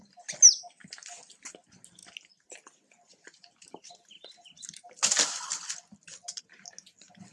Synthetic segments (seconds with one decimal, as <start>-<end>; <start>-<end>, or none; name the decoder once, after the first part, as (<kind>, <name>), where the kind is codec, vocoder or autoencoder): none